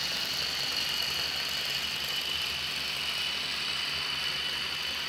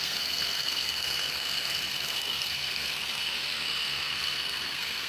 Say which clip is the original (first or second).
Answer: first